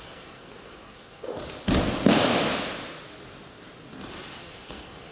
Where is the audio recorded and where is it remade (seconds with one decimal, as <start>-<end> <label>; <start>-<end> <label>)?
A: 0.0-1.3 remade; 1.3-4.4 recorded; 4.4-5.1 remade